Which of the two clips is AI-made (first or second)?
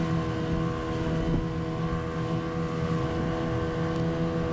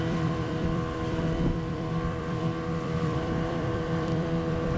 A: second